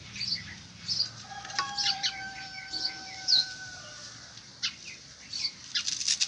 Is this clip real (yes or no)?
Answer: no